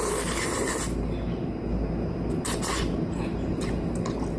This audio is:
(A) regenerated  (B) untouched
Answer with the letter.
B